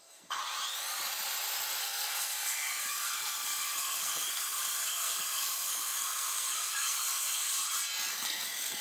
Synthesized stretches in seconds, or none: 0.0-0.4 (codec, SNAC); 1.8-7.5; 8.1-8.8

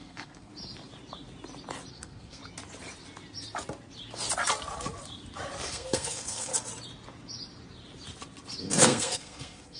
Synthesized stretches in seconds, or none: 0.0-0.5 (codec, SNAC); 1.9-2.4; 5.6-6.5; 8.6-9.8

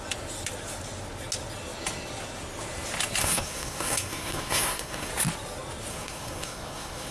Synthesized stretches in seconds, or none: 3.2-5.1 (codec, SNAC); 5.9-7.1

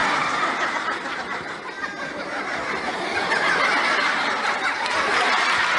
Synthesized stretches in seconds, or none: none

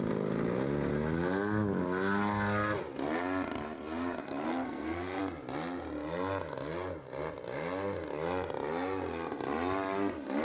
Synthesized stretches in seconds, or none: 4.2-5.2 (codec, SNAC)

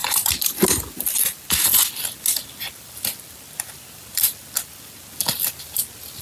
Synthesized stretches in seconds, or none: none

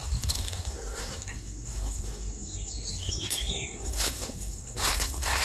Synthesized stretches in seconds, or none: 0.0-5.4 (codec, SNAC)